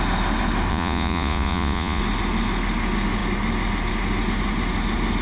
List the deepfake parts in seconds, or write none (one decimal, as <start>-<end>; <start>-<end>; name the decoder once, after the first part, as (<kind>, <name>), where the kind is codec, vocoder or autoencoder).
0.7-2.0 (vocoder, Vocos)